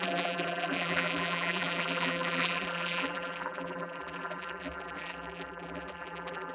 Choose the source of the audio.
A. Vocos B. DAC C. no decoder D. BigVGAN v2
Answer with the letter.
D